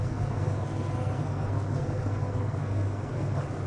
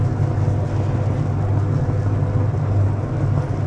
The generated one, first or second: first